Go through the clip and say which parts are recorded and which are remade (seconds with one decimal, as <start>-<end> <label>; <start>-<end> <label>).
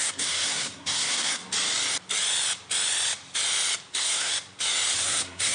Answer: 0.0-1.4 remade; 1.4-3.9 recorded; 3.9-4.3 remade; 4.3-5.0 recorded; 5.0-5.5 remade